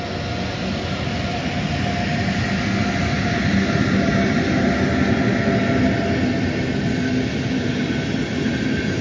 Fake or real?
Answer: real